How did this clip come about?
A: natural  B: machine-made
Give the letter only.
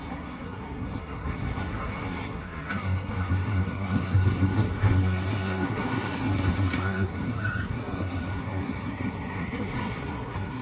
B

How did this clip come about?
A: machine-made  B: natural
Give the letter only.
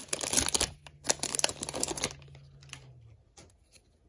B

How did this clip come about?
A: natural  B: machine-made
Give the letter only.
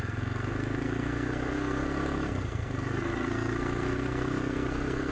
B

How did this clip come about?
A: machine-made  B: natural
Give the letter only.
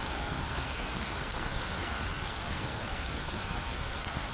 A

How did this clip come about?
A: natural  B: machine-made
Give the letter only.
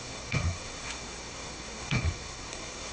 B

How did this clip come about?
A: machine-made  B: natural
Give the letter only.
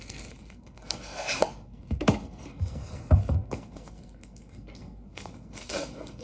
A